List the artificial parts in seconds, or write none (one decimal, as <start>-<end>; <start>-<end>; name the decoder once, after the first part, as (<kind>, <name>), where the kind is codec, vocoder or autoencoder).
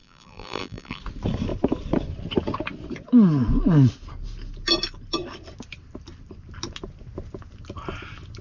0.0-1.0 (vocoder, BigVGAN v2)